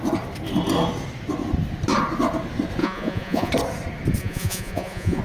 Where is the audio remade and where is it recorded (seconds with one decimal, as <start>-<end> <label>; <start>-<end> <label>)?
0.0-2.8 recorded; 2.8-3.5 remade; 3.5-4.2 recorded; 4.2-5.2 remade